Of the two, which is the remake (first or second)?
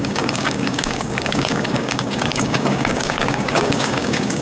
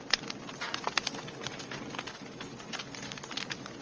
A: first